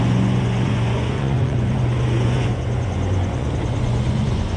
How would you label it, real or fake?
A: fake